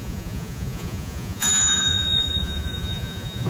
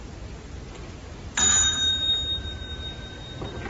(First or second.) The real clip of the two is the second